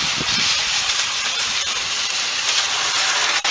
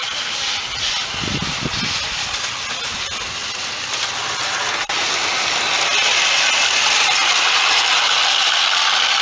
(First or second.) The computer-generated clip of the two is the first